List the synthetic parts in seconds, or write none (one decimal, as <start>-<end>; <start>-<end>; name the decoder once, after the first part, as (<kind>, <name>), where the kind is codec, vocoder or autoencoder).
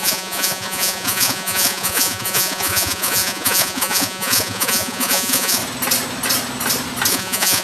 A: 0.0-5.6 (vocoder, Vocos); 7.1-7.6